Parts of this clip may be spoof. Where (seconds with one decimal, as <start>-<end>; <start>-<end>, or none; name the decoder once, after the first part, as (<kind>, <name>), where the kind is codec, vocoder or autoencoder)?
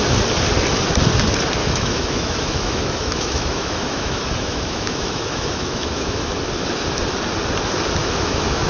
1.6-6.4 (autoencoder, DAC-VAE); 8.0-8.7